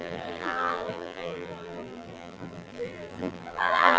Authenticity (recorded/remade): remade